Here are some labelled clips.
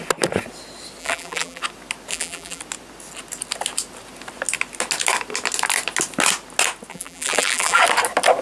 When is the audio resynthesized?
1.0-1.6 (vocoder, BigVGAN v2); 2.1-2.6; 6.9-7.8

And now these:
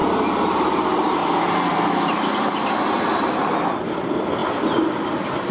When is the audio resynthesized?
0.6-5.5 (vocoder, BigVGAN v2)

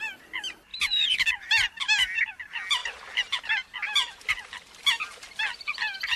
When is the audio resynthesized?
0.7-2.4 (vocoder, BigVGAN v2); 2.8-3.4; 4.0-4.8